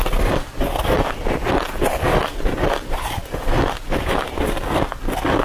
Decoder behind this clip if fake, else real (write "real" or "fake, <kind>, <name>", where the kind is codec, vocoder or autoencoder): real